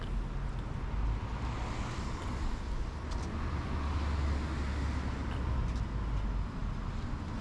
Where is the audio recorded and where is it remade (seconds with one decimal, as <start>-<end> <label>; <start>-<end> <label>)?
0.0-7.4 recorded